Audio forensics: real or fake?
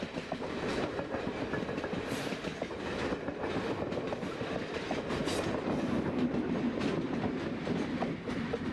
fake